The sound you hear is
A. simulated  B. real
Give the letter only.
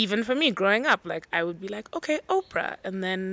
B